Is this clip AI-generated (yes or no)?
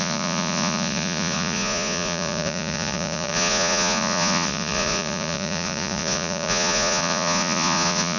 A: yes